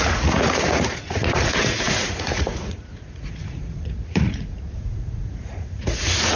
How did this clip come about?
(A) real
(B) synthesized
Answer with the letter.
B